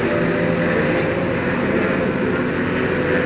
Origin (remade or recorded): recorded